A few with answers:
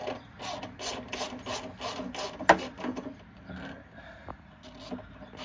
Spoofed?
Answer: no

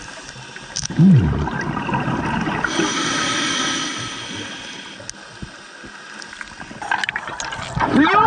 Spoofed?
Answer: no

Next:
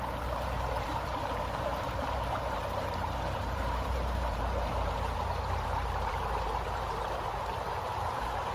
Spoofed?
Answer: yes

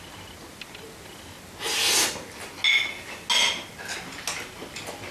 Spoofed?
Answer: no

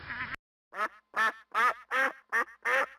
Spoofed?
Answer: no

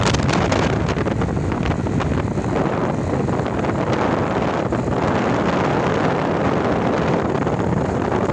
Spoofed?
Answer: no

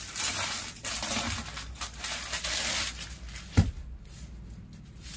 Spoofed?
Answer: no